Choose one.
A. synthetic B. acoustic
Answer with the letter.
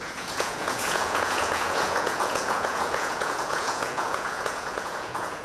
A